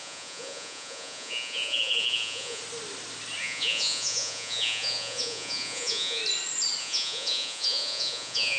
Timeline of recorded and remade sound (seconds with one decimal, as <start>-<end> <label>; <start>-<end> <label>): 0.0-2.6 remade; 2.6-3.4 recorded; 3.4-6.2 remade; 6.2-6.8 recorded; 6.8-8.6 remade